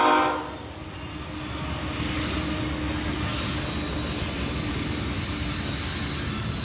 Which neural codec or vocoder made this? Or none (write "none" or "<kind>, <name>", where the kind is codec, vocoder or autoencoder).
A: none